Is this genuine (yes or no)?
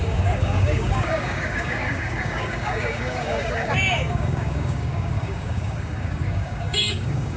no